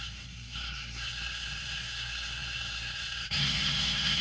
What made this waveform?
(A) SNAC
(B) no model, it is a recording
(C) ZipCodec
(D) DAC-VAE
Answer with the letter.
A